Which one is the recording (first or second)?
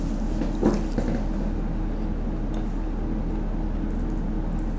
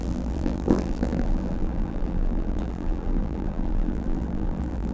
first